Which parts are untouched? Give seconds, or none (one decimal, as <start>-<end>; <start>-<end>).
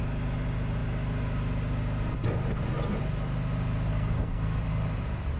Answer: 0.0-3.9; 4.6-5.4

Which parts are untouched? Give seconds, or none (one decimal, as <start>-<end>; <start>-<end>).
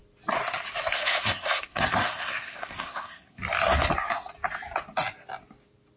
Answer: 0.0-0.9; 3.4-6.0